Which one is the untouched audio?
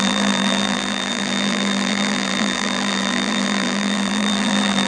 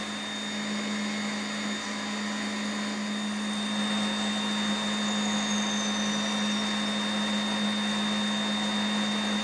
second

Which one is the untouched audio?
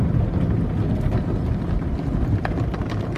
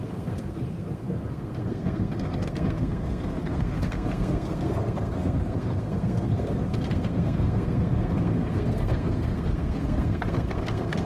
first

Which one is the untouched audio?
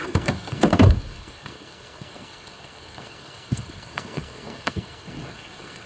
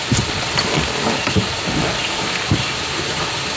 second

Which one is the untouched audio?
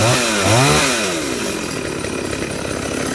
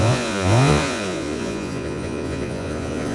first